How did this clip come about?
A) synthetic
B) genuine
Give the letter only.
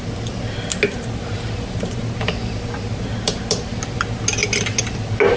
B